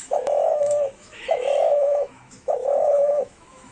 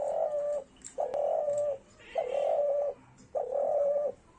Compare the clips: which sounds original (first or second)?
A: second